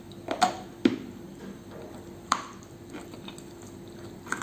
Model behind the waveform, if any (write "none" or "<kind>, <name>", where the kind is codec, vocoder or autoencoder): none